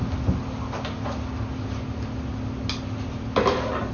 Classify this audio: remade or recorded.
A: recorded